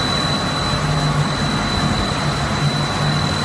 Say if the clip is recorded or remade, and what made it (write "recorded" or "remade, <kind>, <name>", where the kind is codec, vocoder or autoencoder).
recorded